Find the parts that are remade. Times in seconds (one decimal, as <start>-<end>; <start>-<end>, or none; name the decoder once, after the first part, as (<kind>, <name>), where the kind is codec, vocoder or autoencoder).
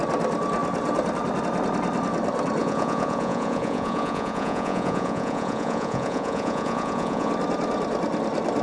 2.6-7.3 (vocoder, Vocos)